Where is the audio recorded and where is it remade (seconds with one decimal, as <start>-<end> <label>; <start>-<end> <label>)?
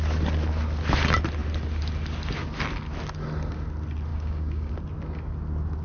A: 0.0-4.1 recorded; 4.1-4.7 remade; 4.7-5.8 recorded